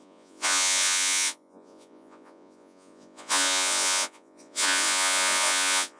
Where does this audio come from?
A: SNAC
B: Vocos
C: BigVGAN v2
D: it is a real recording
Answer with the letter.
B